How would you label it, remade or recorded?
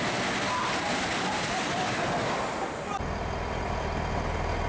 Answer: recorded